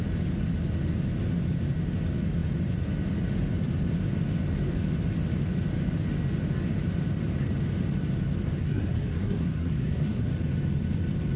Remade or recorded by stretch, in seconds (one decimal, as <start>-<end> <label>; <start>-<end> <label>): 0.0-8.6 recorded; 8.6-10.3 remade; 10.3-11.4 recorded